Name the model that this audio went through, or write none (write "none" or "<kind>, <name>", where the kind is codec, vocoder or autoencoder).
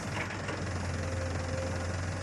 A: none